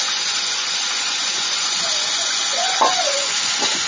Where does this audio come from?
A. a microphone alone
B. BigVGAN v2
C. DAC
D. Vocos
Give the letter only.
D